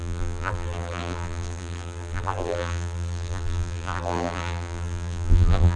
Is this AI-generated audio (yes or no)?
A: yes